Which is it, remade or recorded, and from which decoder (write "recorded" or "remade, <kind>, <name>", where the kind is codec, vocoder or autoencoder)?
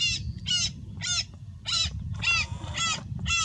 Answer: recorded